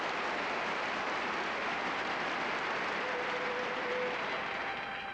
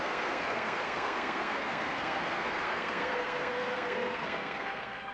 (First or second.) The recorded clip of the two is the first